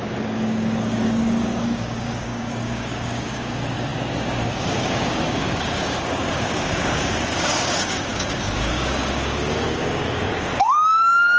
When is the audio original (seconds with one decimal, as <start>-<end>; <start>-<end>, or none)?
none